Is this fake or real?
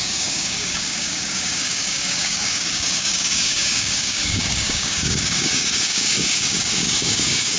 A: fake